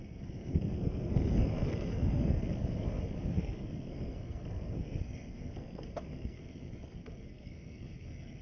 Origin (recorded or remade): remade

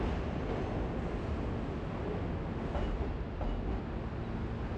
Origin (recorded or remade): recorded